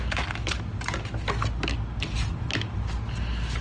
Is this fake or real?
real